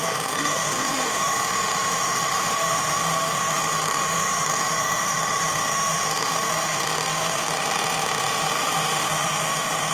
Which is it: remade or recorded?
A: remade